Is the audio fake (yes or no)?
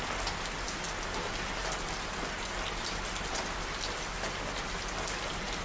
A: no